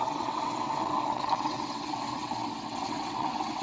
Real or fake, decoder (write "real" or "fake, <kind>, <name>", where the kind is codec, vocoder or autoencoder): fake, vocoder, WaveNeXt